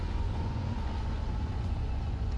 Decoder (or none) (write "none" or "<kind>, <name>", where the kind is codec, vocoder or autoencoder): vocoder, Vocos